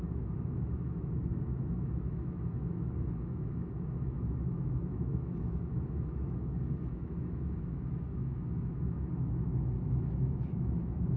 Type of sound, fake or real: fake